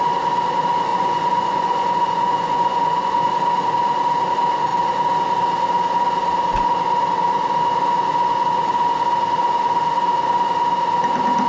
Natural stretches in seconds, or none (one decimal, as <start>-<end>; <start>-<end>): 0.0-0.9; 3.3-11.5